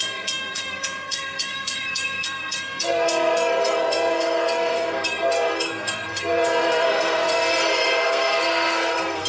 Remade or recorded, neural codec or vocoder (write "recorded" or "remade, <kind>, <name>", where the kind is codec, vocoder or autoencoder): remade, codec, SNAC